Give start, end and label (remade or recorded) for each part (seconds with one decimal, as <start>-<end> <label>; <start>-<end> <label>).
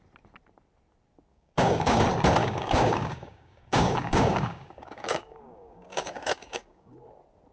0.0-1.3 recorded; 1.3-2.0 remade; 2.0-2.4 recorded; 2.4-6.9 remade; 6.9-7.5 recorded